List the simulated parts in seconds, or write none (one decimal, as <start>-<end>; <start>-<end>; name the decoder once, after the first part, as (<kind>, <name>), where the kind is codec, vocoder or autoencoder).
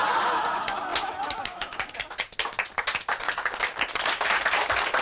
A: none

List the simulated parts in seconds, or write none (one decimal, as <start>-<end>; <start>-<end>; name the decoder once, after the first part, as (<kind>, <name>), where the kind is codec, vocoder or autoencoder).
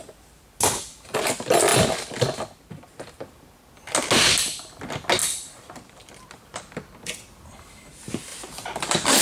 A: 5.2-6.6 (vocoder, BigVGAN v2); 8.3-9.2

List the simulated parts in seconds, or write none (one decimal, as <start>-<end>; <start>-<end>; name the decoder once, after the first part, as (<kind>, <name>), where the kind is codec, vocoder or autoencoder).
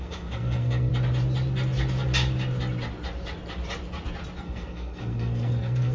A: 0.0-0.9 (codec, SNAC); 4.4-5.9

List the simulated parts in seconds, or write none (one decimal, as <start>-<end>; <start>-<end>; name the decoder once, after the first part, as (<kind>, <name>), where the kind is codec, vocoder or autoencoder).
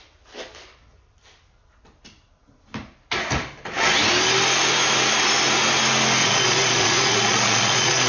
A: 6.2-8.1 (vocoder, Vocos)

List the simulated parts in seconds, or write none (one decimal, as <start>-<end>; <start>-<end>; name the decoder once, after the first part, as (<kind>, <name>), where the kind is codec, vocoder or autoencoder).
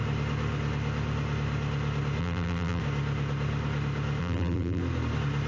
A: 2.2-2.8 (vocoder, BigVGAN v2); 4.2-4.8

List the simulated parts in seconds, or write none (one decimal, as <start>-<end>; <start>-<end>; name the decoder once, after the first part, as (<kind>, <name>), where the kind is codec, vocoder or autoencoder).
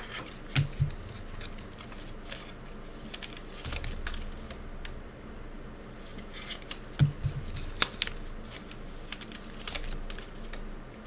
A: none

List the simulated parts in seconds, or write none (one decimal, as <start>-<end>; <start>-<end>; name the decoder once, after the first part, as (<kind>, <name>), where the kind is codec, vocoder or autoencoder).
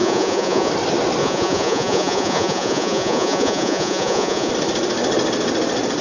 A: 0.0-0.7 (vocoder, Vocos); 1.2-4.5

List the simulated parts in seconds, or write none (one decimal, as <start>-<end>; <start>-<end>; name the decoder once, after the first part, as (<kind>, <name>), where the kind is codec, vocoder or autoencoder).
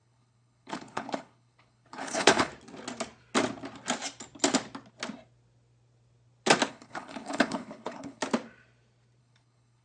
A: 0.0-2.5 (codec, HILCodec); 6.7-8.2; 9.2-9.8